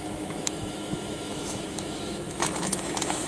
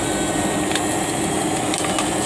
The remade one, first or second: first